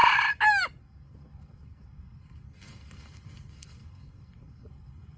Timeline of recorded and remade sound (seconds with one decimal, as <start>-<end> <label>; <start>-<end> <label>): 0.0-0.8 recorded; 0.8-5.2 remade